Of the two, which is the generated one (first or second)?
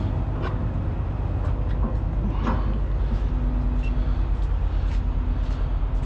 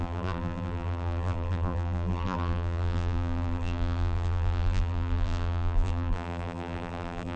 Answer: second